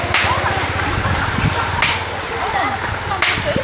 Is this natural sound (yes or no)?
yes